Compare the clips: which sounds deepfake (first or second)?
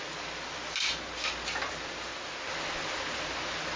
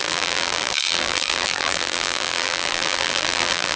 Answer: second